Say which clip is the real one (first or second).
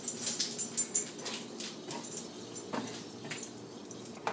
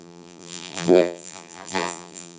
first